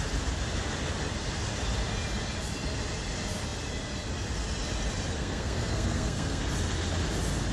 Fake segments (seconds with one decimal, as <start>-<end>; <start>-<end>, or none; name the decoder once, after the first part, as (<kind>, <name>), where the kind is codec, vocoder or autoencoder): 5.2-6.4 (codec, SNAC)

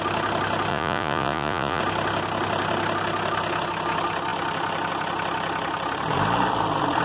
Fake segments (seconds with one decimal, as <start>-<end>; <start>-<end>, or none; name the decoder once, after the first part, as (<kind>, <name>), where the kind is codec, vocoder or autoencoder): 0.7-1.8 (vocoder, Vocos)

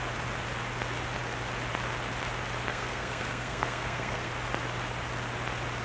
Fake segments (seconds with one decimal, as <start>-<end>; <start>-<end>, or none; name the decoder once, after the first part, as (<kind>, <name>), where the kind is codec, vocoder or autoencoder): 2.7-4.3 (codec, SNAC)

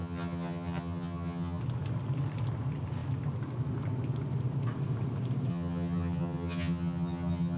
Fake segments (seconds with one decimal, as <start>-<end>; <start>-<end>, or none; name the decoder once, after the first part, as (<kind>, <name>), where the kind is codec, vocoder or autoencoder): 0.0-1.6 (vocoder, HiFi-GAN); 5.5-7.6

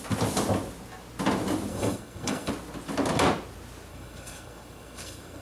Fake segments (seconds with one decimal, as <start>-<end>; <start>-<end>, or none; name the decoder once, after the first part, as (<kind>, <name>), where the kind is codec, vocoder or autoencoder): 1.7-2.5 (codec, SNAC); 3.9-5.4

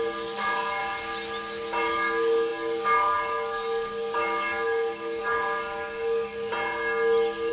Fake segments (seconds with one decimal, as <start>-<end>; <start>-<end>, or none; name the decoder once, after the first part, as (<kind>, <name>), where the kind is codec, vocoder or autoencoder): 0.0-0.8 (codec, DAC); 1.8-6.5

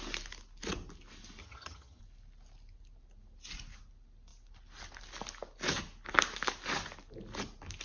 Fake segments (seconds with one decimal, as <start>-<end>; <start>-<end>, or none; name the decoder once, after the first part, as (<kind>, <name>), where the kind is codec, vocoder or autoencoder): 1.4-2.0 (vocoder, HiFi-GAN)

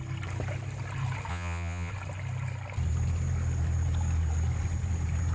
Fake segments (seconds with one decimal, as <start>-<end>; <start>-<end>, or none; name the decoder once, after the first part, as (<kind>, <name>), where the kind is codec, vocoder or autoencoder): 1.3-1.9 (vocoder, Vocos)